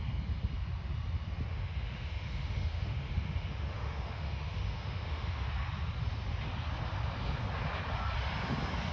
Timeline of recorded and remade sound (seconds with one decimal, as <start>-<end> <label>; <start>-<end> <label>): 0.0-1.5 recorded; 1.5-5.5 remade; 5.5-8.9 recorded